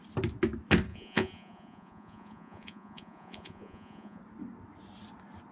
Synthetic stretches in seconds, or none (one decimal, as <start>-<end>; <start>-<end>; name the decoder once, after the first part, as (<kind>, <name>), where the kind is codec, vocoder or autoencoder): 0.9-4.2 (vocoder, Vocos)